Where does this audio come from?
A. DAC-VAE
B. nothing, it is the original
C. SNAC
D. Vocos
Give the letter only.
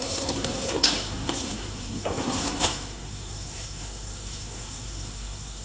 C